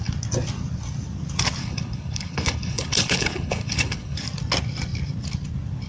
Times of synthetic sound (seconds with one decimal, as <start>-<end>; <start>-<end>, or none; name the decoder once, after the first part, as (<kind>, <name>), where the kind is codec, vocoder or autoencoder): 1.6-4.2 (codec, HILCodec)